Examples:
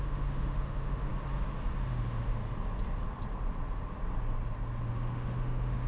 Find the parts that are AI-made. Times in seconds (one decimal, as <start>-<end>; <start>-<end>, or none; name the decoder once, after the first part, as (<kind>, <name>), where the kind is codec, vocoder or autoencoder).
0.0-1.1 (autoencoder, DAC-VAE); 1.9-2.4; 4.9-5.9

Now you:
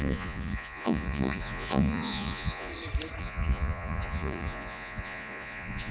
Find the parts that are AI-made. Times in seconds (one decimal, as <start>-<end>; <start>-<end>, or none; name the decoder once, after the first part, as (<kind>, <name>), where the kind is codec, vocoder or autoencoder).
0.0-2.7 (vocoder, Vocos); 3.2-5.9

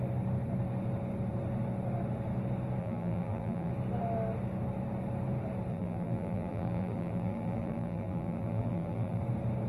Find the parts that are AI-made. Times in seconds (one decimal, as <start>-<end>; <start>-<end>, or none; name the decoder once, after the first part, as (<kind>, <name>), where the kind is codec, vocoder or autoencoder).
2.8-3.7 (vocoder, BigVGAN v2); 5.7-9.2

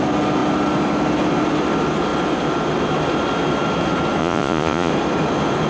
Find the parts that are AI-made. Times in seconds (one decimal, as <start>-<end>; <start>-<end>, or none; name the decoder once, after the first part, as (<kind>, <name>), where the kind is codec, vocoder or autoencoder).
4.2-4.9 (vocoder, Vocos)